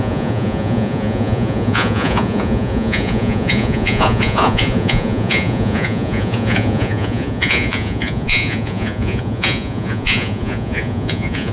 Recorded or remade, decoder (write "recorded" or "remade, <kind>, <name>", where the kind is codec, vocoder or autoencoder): remade, vocoder, Vocos